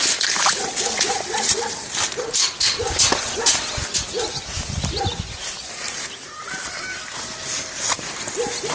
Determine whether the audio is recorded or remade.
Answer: recorded